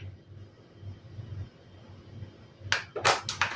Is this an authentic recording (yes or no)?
yes